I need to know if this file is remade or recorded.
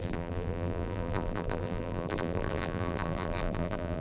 remade